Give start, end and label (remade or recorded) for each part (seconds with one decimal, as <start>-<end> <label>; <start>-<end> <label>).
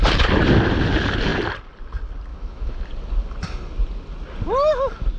0.0-2.3 recorded; 2.3-2.8 remade; 2.8-5.2 recorded